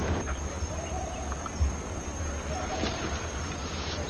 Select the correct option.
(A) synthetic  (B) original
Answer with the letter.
A